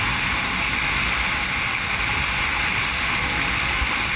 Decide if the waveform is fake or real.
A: real